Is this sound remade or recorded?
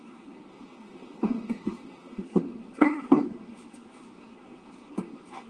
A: remade